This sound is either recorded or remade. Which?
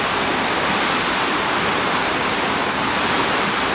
recorded